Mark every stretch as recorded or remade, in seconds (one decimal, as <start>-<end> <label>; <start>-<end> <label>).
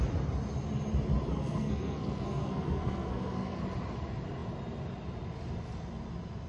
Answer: 0.0-1.3 recorded; 1.3-3.6 remade; 3.6-6.5 recorded